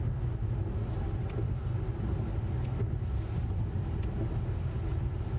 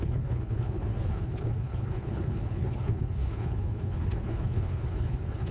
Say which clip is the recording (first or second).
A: first